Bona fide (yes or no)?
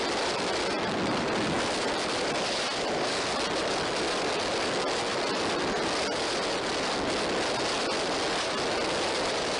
yes